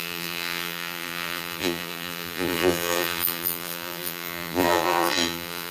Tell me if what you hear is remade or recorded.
remade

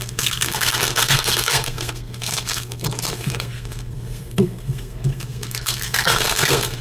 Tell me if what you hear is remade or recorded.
remade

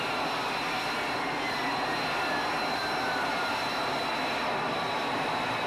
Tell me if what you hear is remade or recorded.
recorded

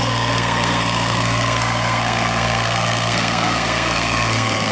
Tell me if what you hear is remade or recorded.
remade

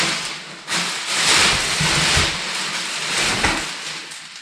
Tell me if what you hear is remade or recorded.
recorded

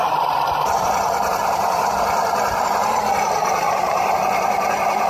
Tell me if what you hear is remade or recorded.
remade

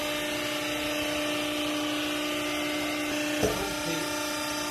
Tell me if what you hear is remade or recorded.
recorded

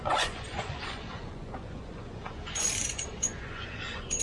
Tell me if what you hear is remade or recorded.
remade